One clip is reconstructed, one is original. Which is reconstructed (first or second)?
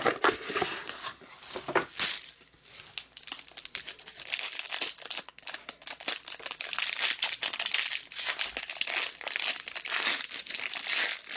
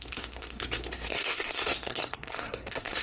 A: second